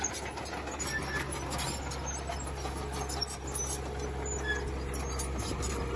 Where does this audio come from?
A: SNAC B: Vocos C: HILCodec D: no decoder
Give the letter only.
D